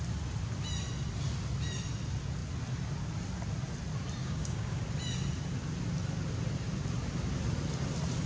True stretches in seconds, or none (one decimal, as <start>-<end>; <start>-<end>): 0.0-4.2; 4.8-8.3